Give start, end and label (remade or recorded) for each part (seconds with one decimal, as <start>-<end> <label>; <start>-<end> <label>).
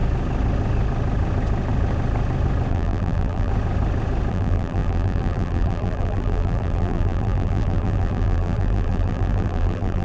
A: 0.0-2.7 recorded; 2.7-3.5 remade; 3.5-4.3 recorded; 4.3-10.0 remade